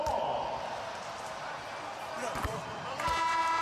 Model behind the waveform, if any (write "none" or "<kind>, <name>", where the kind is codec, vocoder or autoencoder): none